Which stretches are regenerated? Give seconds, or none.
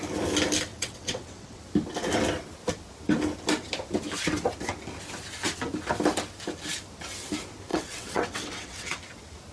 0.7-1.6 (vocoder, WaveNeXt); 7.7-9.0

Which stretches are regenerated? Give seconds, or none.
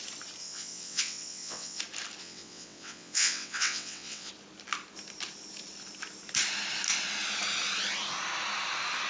0.4-1.8 (vocoder, WaveNeXt); 2.2-4.3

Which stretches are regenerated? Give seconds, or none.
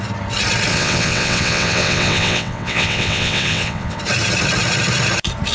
0.7-4.0 (vocoder, WaveNeXt)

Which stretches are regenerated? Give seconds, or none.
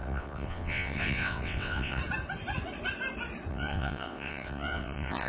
0.0-2.0 (vocoder, WaveNeXt); 3.5-5.3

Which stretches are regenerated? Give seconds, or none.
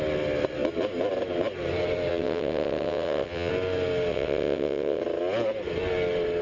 2.1-3.5 (vocoder, WaveNeXt); 4.1-5.0